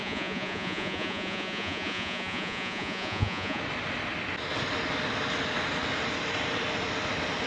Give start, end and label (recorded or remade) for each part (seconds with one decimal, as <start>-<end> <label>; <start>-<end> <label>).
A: 0.0-3.6 remade; 3.6-7.5 recorded